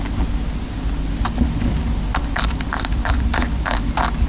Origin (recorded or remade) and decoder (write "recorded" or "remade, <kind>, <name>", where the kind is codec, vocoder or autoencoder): recorded